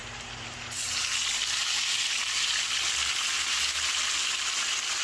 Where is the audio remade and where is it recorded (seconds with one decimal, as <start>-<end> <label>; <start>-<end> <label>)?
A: 0.0-2.0 remade; 2.0-5.0 recorded